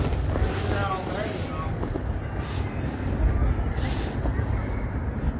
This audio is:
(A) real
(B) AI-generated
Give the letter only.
A